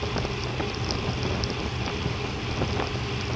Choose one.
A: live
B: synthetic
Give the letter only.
A